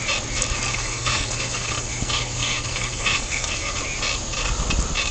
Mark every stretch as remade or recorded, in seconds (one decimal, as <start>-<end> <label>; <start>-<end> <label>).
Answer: 0.0-0.7 recorded; 0.7-3.8 remade; 3.8-5.1 recorded